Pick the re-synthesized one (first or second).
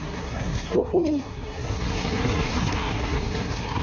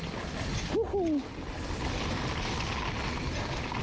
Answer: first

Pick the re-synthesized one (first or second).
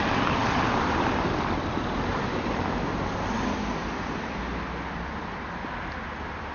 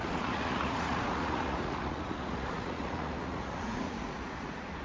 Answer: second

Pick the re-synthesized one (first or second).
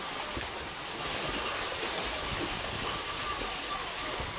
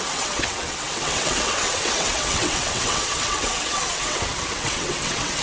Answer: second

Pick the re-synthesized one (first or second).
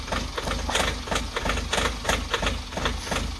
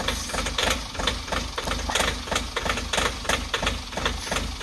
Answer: second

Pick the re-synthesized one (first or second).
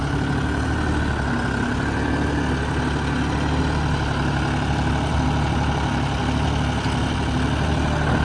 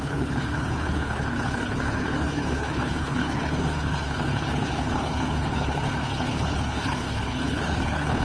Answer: second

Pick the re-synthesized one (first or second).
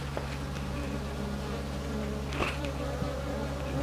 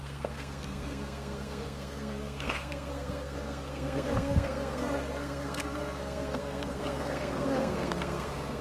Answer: second